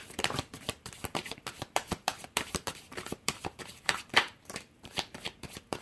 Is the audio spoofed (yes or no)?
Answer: yes